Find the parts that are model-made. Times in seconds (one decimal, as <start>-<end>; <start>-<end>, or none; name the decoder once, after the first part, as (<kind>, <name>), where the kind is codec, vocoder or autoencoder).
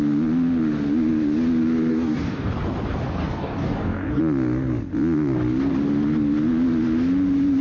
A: 1.9-2.5 (codec, DAC); 3.2-4.2